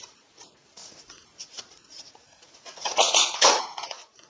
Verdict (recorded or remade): remade